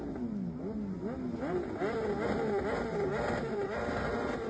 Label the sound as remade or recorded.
recorded